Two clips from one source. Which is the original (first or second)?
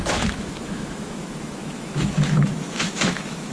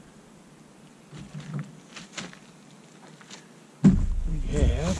second